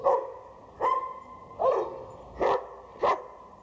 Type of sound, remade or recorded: recorded